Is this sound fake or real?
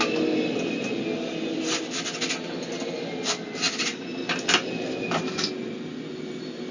real